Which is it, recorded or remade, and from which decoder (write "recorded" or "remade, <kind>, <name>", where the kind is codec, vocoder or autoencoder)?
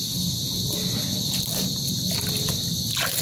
recorded